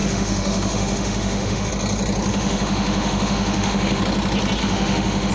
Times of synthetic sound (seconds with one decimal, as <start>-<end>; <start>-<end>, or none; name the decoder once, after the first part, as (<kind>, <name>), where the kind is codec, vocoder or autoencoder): 0.0-1.7 (autoencoder, DAC-VAE); 2.3-4.0; 4.6-5.3